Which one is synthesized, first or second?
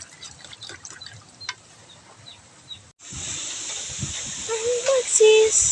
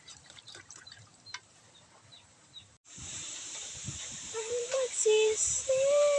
second